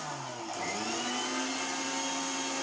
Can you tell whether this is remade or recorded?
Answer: recorded